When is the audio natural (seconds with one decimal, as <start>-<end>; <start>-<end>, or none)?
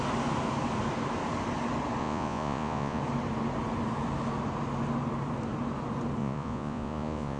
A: 0.0-2.0; 3.0-6.2